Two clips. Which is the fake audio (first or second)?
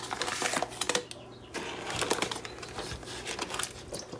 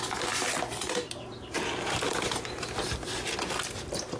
second